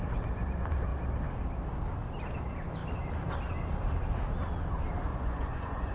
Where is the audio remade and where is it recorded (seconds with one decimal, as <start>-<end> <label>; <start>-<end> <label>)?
0.0-5.1 recorded; 5.1-5.9 remade